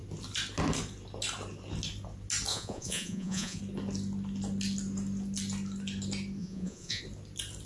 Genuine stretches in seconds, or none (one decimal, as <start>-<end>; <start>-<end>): 0.0-2.5; 3.6-6.4; 7.0-7.7